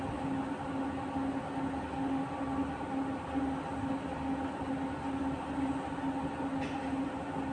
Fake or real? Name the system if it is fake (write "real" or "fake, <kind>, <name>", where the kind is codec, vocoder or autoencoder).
real